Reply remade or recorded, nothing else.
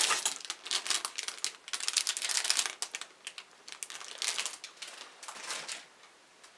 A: recorded